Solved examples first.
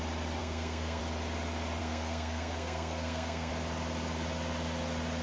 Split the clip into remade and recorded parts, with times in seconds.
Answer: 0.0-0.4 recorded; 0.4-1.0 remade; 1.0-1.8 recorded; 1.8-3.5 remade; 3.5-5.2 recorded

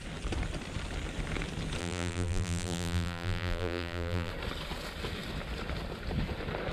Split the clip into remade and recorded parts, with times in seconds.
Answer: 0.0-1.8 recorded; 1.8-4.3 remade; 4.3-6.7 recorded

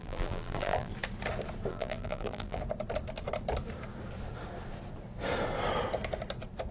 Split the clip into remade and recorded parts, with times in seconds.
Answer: 0.0-0.9 remade; 0.9-1.7 recorded; 1.7-2.6 remade; 2.6-6.7 recorded

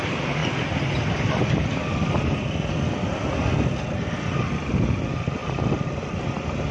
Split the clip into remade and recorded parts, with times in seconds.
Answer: 0.0-6.7 recorded

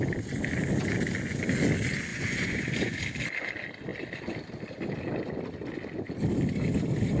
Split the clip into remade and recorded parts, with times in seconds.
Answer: 0.0-2.1 recorded; 2.1-3.0 remade; 3.0-7.2 recorded

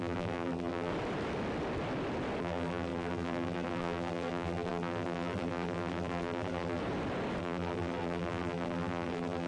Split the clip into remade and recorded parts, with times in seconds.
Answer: 0.0-0.9 remade; 0.9-2.4 recorded; 2.4-6.8 remade; 6.8-7.4 recorded; 7.4-9.5 remade